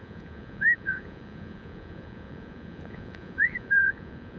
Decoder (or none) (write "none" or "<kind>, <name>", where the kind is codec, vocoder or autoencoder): vocoder, Vocos